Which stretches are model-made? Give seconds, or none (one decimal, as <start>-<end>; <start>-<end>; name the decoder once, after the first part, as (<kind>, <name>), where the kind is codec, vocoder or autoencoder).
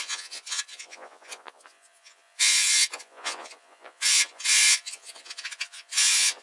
0.0-6.4 (vocoder, Vocos)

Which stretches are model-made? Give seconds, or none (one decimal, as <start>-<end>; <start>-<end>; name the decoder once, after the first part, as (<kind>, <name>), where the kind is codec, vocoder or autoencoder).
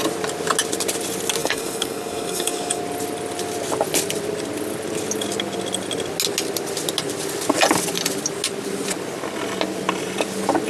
1.4-2.8 (codec, DAC)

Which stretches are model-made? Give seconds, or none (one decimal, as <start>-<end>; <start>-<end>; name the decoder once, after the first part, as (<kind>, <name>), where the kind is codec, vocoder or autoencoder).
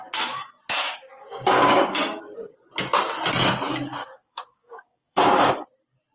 0.8-2.2 (codec, DAC); 4.0-5.5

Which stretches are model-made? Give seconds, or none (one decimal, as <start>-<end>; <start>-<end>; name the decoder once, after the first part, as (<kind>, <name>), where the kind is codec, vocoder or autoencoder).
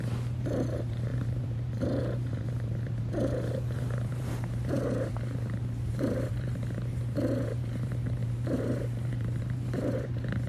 0.0-10.5 (vocoder, BigVGAN v2)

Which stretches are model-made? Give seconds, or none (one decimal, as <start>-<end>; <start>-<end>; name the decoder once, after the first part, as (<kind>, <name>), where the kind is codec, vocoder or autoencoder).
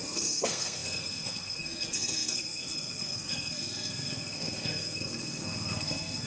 0.0-6.3 (codec, SNAC)